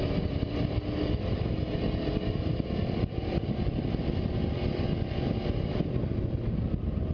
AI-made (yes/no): no